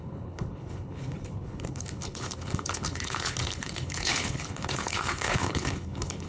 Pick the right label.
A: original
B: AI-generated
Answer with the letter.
B